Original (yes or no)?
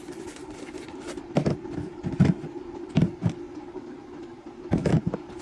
no